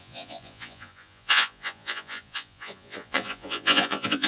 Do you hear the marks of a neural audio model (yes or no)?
yes